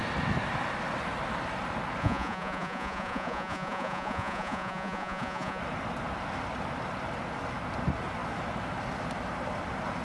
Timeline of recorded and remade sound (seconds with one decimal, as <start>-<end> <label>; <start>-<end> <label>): 0.0-2.0 recorded; 2.0-5.6 remade; 5.6-10.0 recorded